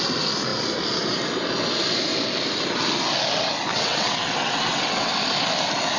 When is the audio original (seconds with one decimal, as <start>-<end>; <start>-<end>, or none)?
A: 0.0-3.7; 5.1-6.0